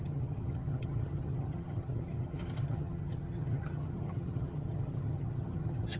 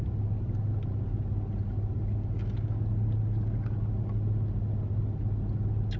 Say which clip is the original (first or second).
second